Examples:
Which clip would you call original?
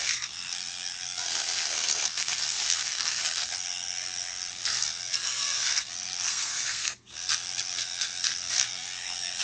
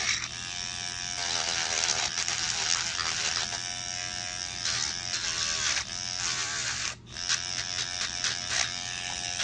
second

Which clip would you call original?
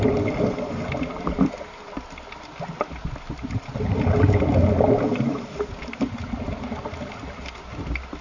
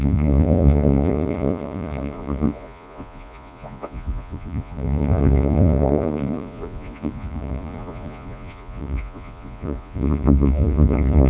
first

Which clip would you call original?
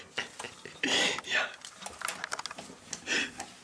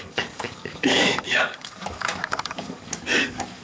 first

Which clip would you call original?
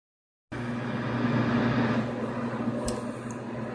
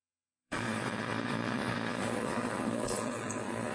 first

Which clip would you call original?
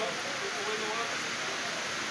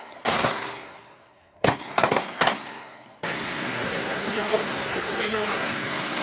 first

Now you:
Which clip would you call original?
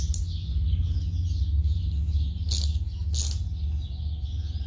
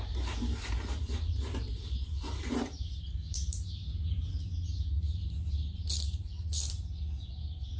first